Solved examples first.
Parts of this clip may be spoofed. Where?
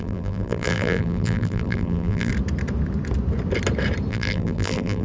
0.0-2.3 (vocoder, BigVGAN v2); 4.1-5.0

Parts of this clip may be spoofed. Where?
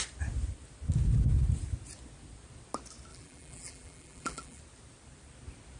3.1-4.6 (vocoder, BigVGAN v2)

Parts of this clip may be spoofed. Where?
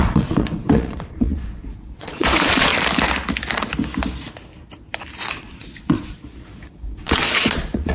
0.0-2.7 (vocoder, Vocos); 5.4-7.9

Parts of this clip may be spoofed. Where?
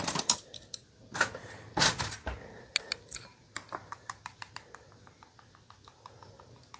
none